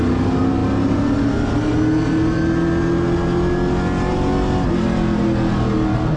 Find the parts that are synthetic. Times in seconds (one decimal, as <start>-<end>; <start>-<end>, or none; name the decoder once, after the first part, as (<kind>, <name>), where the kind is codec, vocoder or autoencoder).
none

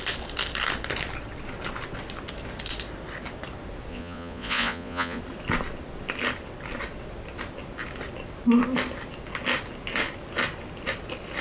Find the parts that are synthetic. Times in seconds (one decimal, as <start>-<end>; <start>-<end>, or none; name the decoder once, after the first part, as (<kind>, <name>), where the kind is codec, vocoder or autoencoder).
3.9-5.2 (vocoder, Vocos)

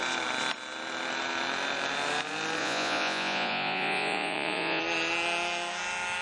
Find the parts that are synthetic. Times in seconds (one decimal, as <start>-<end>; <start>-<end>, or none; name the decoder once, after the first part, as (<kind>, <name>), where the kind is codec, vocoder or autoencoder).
2.6-4.8 (vocoder, Vocos)